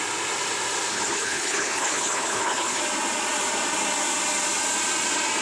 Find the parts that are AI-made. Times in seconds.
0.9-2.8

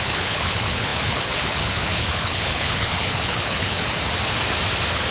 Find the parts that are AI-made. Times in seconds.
0.0-3.8

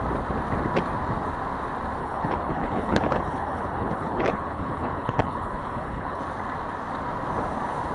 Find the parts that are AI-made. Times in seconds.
2.0-6.2